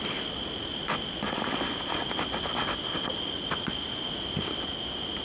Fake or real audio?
real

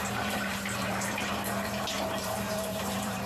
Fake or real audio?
fake